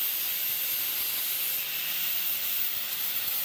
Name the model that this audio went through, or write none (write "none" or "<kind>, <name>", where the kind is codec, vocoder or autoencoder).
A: vocoder, BigVGAN v2